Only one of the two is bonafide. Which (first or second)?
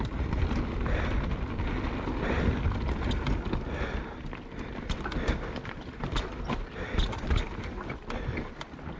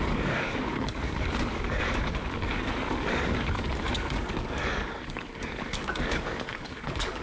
first